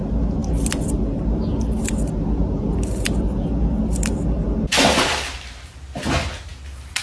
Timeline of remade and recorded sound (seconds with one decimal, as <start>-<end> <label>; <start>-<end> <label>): 0.0-7.0 recorded